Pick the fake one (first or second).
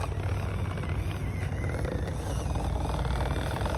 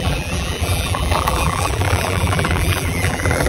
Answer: second